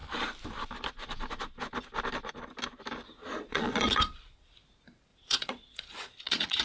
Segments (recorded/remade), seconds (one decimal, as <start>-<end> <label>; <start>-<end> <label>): 0.0-3.2 recorded; 3.2-4.6 remade; 4.6-5.1 recorded; 5.1-6.6 remade